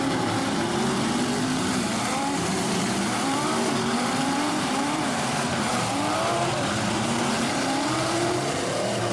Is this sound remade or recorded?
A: remade